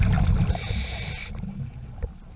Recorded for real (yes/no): yes